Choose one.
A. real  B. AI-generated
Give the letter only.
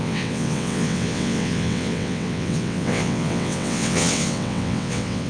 B